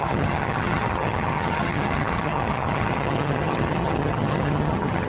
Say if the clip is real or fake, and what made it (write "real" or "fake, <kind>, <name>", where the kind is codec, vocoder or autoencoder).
fake, vocoder, HiFi-GAN